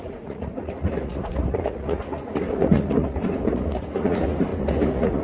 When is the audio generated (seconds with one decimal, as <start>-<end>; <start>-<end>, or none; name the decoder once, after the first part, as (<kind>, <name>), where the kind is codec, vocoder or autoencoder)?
0.0-5.2 (vocoder, Vocos)